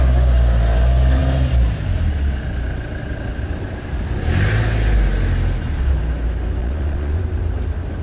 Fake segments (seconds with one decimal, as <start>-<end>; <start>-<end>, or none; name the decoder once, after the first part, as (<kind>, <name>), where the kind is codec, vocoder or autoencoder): 6.6-7.2 (vocoder, Vocos)